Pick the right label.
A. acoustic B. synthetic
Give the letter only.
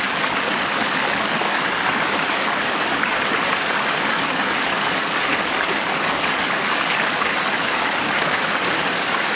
B